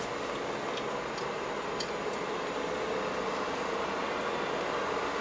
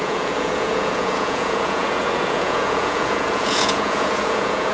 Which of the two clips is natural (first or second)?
first